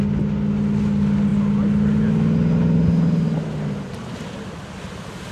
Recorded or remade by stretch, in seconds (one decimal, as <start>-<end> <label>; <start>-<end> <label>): 0.0-5.3 recorded